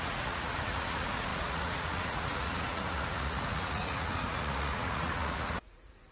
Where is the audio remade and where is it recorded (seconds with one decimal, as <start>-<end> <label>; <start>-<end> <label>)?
0.0-6.1 remade